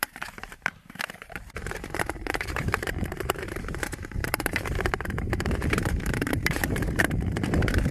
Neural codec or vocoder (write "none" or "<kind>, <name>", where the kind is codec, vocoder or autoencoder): vocoder, BigVGAN v2